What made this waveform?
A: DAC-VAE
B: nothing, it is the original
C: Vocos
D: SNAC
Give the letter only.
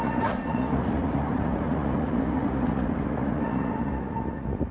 C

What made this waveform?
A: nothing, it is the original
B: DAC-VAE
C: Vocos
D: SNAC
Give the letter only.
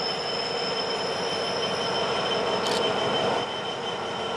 A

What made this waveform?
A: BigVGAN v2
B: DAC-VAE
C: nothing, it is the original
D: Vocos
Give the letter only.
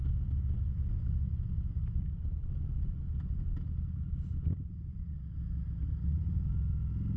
C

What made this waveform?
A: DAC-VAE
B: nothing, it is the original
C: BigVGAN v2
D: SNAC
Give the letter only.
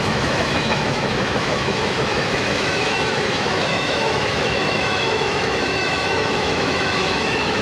A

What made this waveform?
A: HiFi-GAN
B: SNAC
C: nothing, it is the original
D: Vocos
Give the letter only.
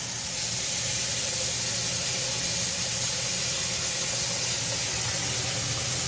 C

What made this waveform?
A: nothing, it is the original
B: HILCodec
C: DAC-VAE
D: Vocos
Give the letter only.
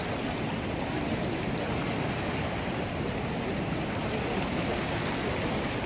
A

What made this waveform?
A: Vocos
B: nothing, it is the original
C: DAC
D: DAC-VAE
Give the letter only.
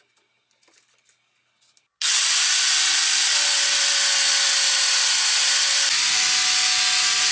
B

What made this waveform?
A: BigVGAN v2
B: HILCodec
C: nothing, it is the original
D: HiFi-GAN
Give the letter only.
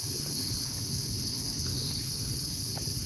B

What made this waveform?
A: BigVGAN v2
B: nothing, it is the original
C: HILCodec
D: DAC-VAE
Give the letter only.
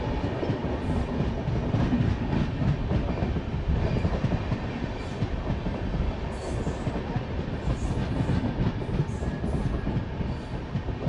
B